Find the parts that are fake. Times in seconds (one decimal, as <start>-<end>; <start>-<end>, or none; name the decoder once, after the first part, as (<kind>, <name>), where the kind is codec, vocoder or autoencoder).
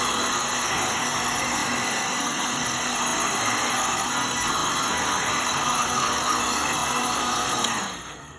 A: 0.0-8.4 (codec, SNAC)